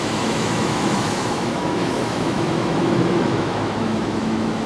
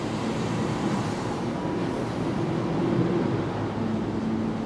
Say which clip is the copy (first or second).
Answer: first